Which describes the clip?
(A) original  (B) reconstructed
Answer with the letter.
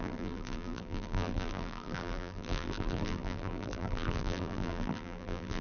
B